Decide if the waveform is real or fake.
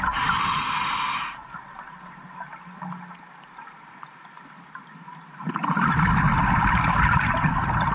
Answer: real